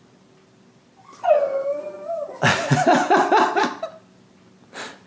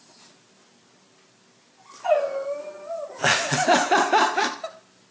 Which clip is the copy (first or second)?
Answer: first